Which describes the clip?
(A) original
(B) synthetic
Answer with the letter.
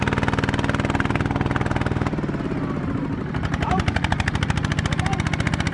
A